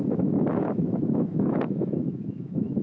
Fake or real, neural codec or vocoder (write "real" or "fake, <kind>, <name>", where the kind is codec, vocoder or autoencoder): fake, autoencoder, DAC-VAE